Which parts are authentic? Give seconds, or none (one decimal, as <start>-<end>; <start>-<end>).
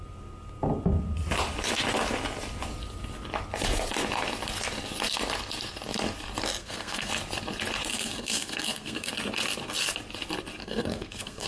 0.0-6.6; 7.1-7.9; 9.1-10.6